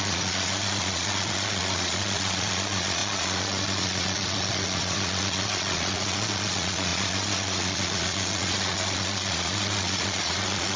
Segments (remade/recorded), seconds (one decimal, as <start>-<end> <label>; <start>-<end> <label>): 0.0-10.8 remade